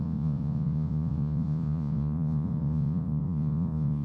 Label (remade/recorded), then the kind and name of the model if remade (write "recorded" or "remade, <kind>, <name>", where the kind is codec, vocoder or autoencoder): remade, vocoder, Vocos